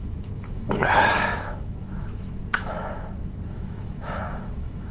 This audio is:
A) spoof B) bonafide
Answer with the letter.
A